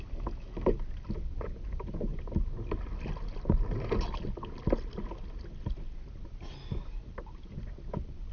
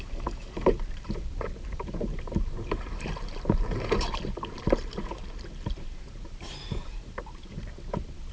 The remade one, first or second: second